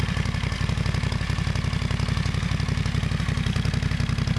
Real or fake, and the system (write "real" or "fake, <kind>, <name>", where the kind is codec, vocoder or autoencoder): real